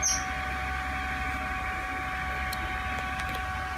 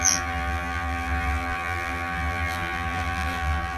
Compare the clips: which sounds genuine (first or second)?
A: first